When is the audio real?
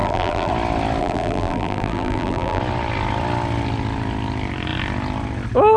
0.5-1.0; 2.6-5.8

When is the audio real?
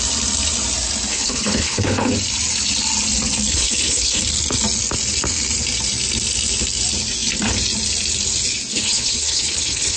0.0-1.1; 2.1-3.5; 4.2-8.7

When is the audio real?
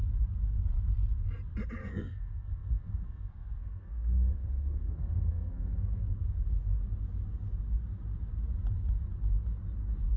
0.0-1.8; 6.0-10.2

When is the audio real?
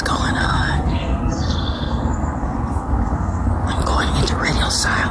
0.0-0.4; 3.5-5.1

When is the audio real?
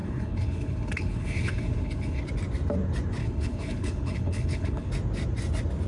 2.2-3.2; 4.9-5.9